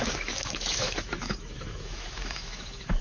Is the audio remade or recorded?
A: remade